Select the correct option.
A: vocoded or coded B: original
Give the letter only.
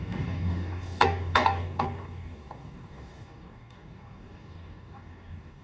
A